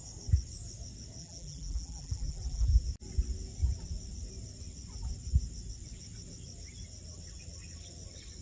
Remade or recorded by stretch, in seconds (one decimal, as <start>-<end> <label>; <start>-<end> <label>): 0.0-1.2 recorded; 1.2-2.8 remade; 2.8-8.4 recorded